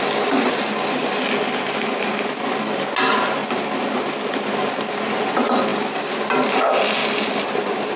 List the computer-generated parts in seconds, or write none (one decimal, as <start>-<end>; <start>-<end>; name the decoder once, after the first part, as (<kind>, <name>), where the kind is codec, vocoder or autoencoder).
5.7-6.2 (vocoder, BigVGAN v2); 7.0-8.0